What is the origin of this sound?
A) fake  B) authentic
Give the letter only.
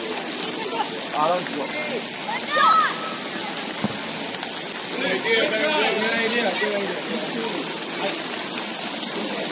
B